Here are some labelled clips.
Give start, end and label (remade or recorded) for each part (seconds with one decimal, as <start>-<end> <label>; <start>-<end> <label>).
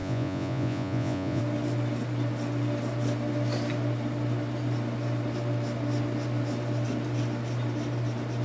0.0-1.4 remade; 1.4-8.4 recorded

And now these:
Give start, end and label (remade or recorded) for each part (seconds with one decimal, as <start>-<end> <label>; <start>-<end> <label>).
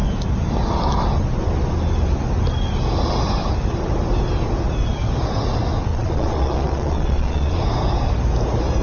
0.0-5.9 recorded; 5.9-7.6 remade; 7.6-8.8 recorded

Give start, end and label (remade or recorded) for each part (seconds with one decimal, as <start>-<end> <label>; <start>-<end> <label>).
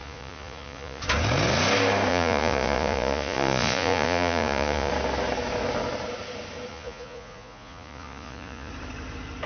0.0-1.0 remade; 1.0-2.1 recorded; 2.1-4.9 remade; 4.9-6.7 recorded; 6.7-8.7 remade; 8.7-9.5 recorded